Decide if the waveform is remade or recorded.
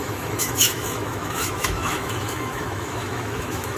remade